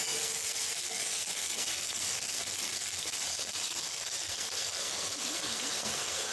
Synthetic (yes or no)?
yes